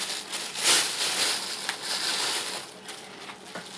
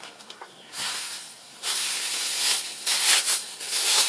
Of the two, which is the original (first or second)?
first